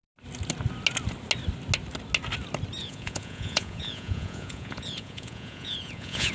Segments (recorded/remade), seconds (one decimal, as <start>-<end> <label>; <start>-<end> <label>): 0.0-2.8 recorded; 2.8-6.3 remade